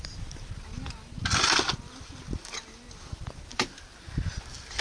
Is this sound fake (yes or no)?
no